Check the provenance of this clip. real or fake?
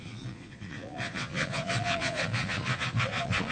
fake